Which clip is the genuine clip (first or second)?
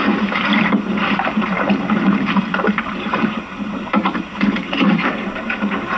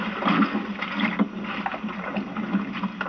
second